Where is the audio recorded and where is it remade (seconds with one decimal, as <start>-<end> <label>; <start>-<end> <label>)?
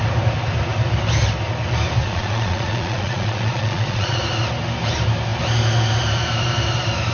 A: 0.0-2.0 recorded; 2.0-4.2 remade; 4.2-7.1 recorded